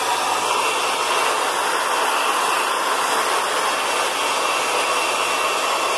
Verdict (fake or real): real